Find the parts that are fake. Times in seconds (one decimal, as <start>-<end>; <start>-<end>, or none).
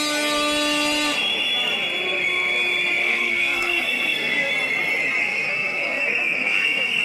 3.0-4.5; 5.2-7.0